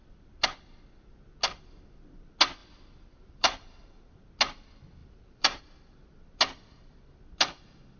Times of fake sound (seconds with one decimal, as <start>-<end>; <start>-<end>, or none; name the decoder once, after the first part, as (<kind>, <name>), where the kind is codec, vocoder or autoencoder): 2.6-4.0 (vocoder, BigVGAN v2); 5.0-5.6

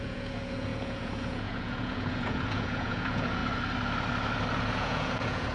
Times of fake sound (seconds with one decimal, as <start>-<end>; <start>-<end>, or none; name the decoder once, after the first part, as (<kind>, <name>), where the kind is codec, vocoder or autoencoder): 0.0-3.4 (vocoder, Vocos); 4.7-5.5

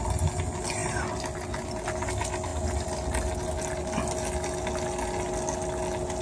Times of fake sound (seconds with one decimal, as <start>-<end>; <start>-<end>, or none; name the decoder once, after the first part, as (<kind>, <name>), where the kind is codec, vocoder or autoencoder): none